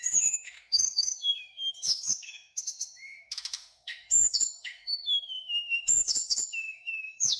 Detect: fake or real fake